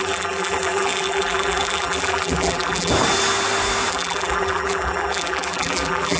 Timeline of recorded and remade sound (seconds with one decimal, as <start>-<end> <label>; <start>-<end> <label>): 0.0-2.9 remade; 2.9-3.9 recorded; 3.9-6.2 remade